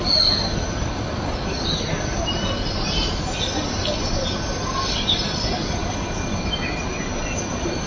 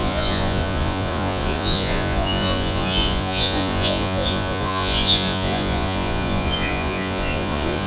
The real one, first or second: first